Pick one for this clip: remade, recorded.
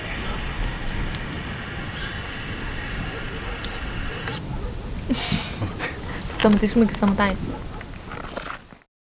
recorded